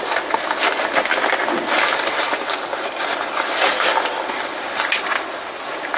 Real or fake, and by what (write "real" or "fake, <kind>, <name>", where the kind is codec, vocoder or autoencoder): real